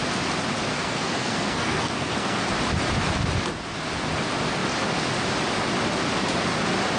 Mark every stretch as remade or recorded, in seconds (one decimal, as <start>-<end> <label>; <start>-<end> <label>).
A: 0.0-0.7 recorded; 0.7-2.4 remade; 2.4-7.0 recorded